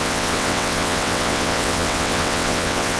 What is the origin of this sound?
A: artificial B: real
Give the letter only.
A